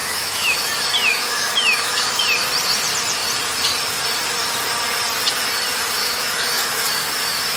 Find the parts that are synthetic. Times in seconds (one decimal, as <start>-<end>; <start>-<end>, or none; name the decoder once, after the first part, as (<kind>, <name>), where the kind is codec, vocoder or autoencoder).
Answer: 0.0-0.6 (autoencoder, DAC-VAE); 1.1-2.2; 6.0-6.8